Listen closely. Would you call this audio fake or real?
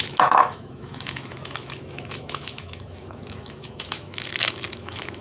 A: fake